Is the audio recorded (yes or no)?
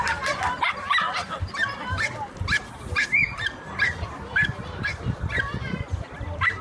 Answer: no